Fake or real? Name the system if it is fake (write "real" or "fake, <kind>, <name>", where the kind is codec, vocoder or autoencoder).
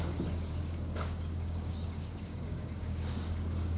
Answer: fake, codec, DAC